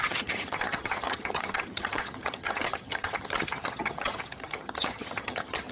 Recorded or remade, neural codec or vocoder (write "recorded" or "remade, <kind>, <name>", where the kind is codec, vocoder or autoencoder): remade, vocoder, HiFi-GAN